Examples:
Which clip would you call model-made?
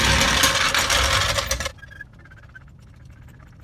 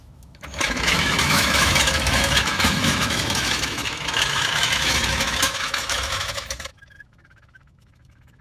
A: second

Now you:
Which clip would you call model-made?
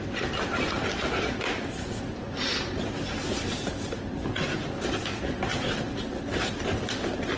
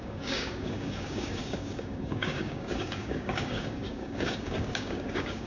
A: second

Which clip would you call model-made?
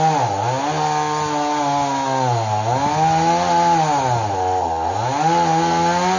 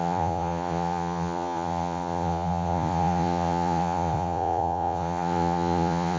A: second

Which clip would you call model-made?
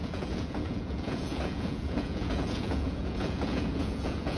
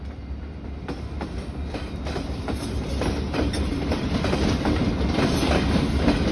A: first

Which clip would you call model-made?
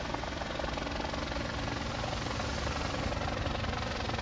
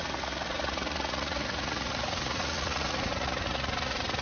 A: second